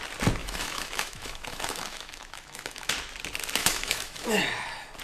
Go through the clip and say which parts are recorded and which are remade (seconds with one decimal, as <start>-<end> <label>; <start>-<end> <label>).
0.0-0.4 recorded; 0.4-2.9 remade; 2.9-3.6 recorded; 3.6-4.4 remade; 4.4-5.0 recorded